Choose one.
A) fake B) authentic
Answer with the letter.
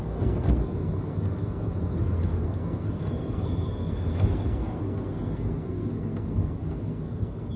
A